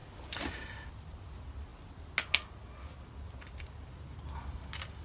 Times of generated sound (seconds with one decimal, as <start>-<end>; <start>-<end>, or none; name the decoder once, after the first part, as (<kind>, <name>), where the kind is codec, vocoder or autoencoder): none